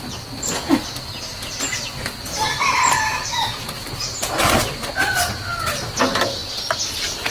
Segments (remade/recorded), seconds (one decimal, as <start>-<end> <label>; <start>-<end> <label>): 0.0-7.3 recorded